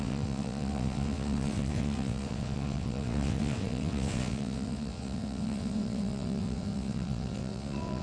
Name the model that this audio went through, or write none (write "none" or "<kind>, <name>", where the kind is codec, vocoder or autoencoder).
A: vocoder, WaveNeXt